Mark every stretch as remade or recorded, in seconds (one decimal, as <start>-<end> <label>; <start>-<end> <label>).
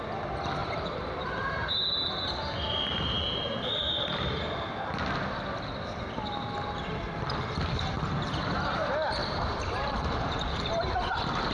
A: 0.0-0.6 recorded; 0.6-1.7 remade; 1.7-2.9 recorded; 2.9-4.3 remade; 4.3-9.2 recorded; 9.2-10.7 remade; 10.7-11.5 recorded